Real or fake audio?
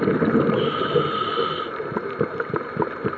real